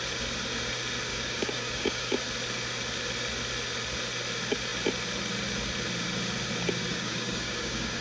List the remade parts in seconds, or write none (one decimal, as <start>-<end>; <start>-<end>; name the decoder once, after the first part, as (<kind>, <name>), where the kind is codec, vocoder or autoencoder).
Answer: 1.1-2.2 (codec, DAC); 6.9-8.0